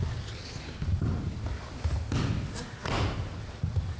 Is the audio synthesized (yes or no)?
no